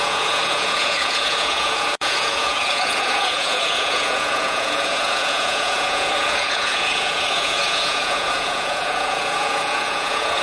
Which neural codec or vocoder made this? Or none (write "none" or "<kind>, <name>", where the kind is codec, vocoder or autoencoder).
vocoder, Vocos